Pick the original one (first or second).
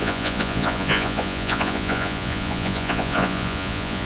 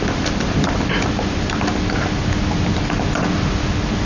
second